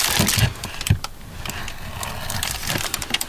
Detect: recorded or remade recorded